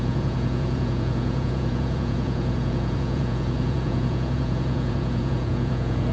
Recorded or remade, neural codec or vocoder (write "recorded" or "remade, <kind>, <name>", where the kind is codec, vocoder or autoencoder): remade, vocoder, Vocos